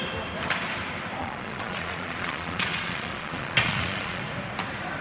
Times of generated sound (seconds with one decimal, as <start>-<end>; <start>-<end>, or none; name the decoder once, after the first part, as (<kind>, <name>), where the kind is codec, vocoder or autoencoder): 1.2-4.2 (vocoder, Vocos)